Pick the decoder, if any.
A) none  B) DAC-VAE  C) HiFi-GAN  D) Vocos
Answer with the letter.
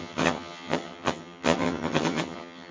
C